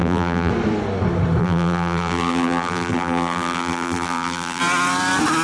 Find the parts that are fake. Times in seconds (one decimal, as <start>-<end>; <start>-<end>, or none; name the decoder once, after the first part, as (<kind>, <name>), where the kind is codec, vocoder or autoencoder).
0.0-0.5 (vocoder, BigVGAN v2); 1.4-4.6